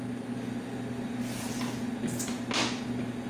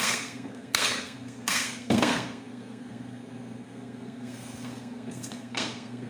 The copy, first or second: second